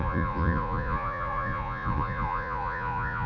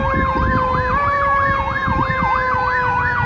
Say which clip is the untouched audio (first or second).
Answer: second